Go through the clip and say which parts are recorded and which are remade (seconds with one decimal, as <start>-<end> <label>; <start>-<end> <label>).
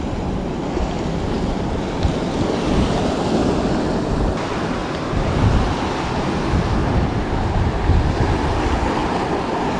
0.0-4.8 recorded; 4.8-5.9 remade; 5.9-6.8 recorded; 6.8-8.3 remade; 8.3-9.0 recorded; 9.0-9.8 remade